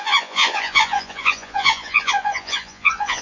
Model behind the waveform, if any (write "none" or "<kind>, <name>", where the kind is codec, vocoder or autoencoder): vocoder, Vocos